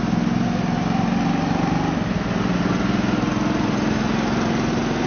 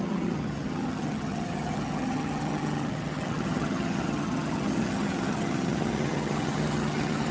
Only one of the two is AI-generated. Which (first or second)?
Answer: second